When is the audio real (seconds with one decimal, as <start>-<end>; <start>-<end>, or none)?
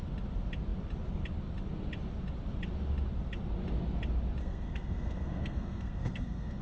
0.0-4.4